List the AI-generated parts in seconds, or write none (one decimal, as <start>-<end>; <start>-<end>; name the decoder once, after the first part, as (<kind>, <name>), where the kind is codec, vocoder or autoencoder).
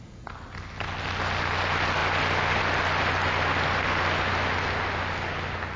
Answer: none